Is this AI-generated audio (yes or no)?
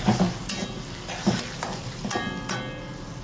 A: no